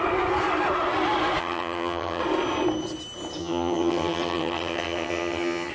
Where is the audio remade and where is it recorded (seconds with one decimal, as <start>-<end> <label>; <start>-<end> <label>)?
0.0-1.4 recorded; 1.4-2.2 remade; 2.2-3.4 recorded; 3.4-5.7 remade